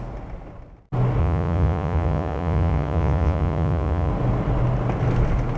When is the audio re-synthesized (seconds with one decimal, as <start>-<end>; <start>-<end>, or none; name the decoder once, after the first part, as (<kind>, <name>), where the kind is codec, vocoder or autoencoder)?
1.2-4.1 (vocoder, Vocos)